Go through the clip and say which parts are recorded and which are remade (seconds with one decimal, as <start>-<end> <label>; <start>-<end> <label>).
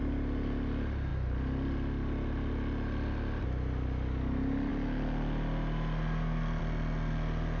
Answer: 0.0-7.6 recorded